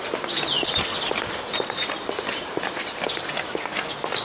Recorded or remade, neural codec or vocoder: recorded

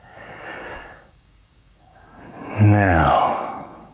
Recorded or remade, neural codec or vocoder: remade, codec, DAC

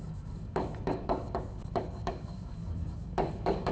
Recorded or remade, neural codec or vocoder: remade, codec, DAC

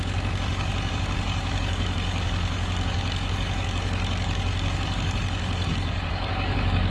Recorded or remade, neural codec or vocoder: remade, codec, DAC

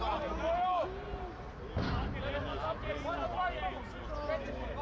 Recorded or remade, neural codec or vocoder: recorded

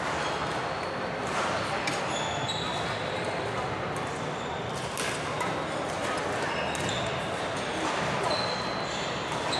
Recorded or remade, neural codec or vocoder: recorded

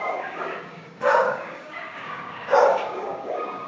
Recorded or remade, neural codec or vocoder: remade, codec, DAC